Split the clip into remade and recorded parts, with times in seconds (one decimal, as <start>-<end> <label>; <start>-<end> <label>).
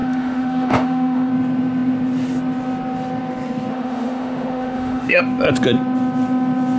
0.0-1.3 remade; 1.3-3.7 recorded; 3.7-5.2 remade; 5.2-6.8 recorded